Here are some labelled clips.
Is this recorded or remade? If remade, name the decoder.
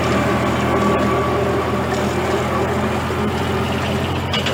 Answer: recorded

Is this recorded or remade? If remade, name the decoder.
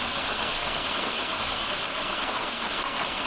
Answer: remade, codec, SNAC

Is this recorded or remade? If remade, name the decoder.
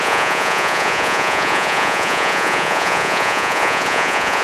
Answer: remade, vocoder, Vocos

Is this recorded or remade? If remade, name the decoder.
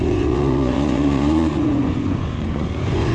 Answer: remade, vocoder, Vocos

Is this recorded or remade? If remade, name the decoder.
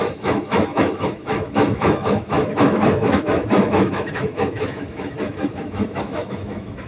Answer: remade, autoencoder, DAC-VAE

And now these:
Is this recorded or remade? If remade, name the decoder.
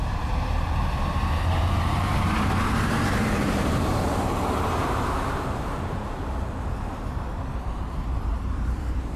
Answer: remade, vocoder, BigVGAN v2